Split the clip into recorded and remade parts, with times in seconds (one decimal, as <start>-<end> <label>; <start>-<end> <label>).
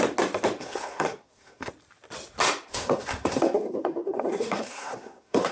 0.0-0.6 recorded; 0.6-1.7 remade; 1.7-2.7 recorded; 2.7-5.5 remade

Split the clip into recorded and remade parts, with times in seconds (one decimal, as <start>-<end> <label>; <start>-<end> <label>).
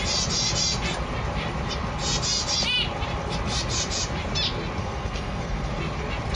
0.0-4.8 recorded; 4.8-5.7 remade; 5.7-6.3 recorded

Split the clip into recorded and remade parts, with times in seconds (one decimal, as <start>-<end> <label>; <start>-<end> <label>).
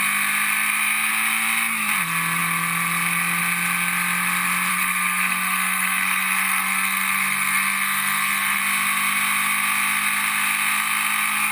0.0-4.7 recorded; 4.7-8.6 remade; 8.6-11.5 recorded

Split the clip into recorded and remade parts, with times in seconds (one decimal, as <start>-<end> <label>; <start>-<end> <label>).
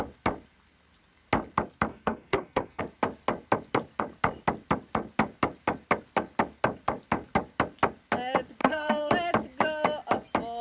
0.0-1.9 recorded; 1.9-2.8 remade; 2.8-8.6 recorded; 8.6-9.1 remade; 9.1-10.6 recorded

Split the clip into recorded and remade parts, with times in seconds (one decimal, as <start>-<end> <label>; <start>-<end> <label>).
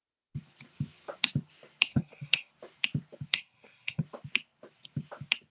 0.0-1.9 recorded; 1.9-2.5 remade; 2.5-3.3 recorded; 3.3-4.0 remade; 4.0-5.5 recorded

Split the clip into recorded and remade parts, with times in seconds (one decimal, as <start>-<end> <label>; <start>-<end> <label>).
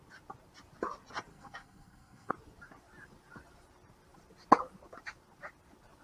0.0-1.3 recorded; 1.3-2.3 remade; 2.3-6.0 recorded